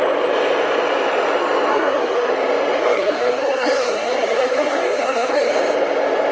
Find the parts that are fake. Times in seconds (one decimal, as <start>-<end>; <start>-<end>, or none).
1.7-2.3; 2.7-5.5